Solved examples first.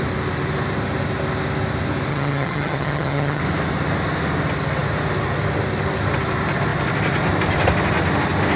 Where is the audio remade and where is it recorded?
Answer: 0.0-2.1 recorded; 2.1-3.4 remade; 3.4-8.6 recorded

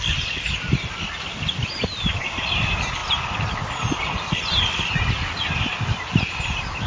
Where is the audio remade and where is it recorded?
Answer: 0.0-6.9 recorded

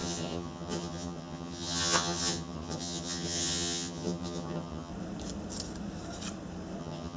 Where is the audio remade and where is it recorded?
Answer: 0.0-4.9 remade; 4.9-6.8 recorded; 6.8-7.2 remade

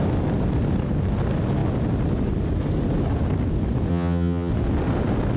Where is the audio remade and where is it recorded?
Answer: 0.0-3.9 recorded; 3.9-4.5 remade; 4.5-5.4 recorded

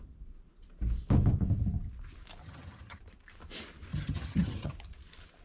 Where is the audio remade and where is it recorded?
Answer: 0.0-2.4 recorded; 2.4-3.0 remade; 3.0-3.9 recorded; 3.9-4.7 remade; 4.7-5.4 recorded

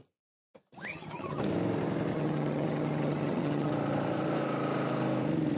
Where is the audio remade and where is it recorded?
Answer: 0.0-0.9 recorded; 0.9-1.4 remade; 1.4-2.1 recorded; 2.1-3.7 remade; 3.7-5.6 recorded

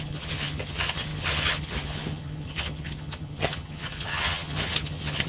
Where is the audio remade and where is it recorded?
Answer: 0.0-5.3 remade

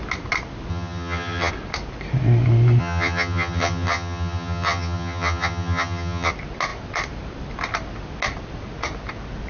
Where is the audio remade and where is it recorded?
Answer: 0.0-0.7 recorded; 0.7-1.5 remade; 1.5-2.8 recorded; 2.8-6.3 remade; 6.3-9.5 recorded